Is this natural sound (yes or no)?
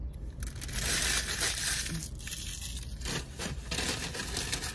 yes